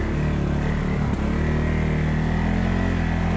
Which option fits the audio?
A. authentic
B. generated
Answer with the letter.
A